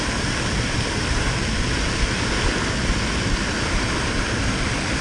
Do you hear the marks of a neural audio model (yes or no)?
no